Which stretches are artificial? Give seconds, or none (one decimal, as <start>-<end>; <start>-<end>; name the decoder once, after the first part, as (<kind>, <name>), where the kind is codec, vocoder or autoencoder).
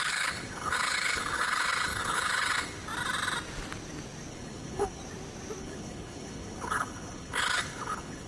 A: 0.0-2.8 (codec, HILCodec); 4.3-5.0; 5.6-8.3